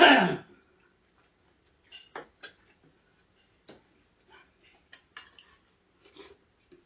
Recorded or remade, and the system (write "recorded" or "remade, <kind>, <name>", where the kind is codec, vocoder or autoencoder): recorded